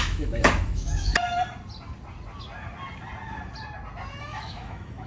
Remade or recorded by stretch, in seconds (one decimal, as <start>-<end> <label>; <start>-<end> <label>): 0.0-1.1 remade; 1.1-4.2 recorded; 4.2-5.1 remade